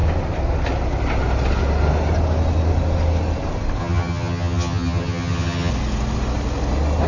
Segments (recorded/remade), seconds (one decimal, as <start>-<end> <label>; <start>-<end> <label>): 0.0-3.8 recorded; 3.8-5.7 remade; 5.7-7.1 recorded